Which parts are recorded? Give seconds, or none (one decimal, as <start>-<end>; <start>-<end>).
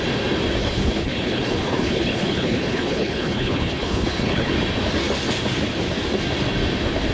0.0-0.6; 4.5-7.1